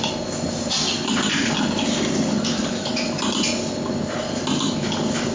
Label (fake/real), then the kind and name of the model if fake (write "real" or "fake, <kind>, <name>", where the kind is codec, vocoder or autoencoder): real